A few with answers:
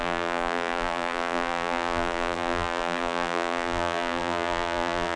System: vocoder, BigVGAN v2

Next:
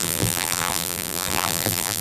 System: vocoder, BigVGAN v2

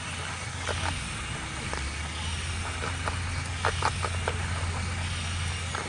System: none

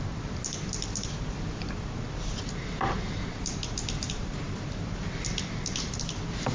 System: vocoder, BigVGAN v2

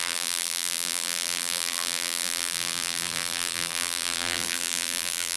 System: vocoder, BigVGAN v2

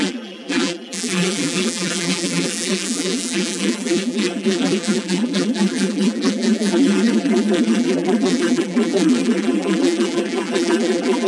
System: vocoder, BigVGAN v2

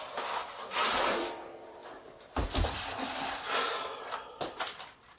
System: vocoder, BigVGAN v2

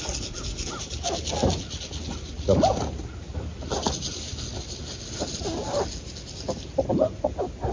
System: none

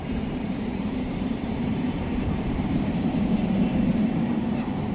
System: vocoder, BigVGAN v2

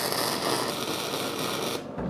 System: none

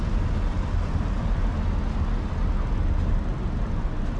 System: none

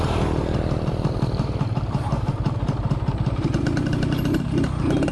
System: vocoder, BigVGAN v2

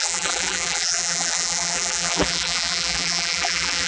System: vocoder, BigVGAN v2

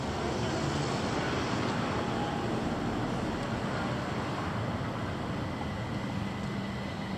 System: none